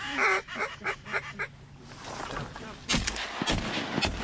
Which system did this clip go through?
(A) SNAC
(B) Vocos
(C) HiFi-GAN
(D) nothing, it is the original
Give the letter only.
D